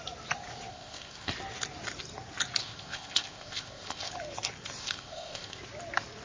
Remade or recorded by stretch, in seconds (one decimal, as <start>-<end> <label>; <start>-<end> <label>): 0.0-0.7 recorded; 0.7-1.3 remade; 1.3-2.6 recorded; 2.6-4.1 remade; 4.1-4.8 recorded; 4.8-5.6 remade; 5.6-6.2 recorded